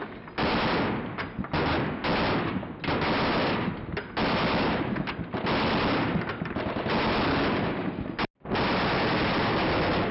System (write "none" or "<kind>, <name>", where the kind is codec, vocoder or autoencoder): none